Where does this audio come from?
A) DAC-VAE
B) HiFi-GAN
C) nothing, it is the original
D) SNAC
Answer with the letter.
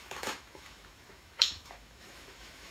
A